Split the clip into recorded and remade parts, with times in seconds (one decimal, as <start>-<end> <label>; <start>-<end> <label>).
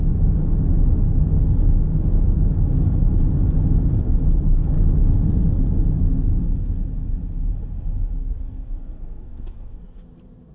0.0-8.2 recorded; 8.2-9.7 remade; 9.7-10.5 recorded